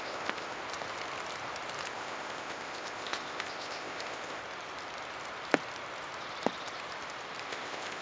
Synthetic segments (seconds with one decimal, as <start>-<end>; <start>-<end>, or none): 0.0-0.6; 1.9-4.4; 7.5-8.0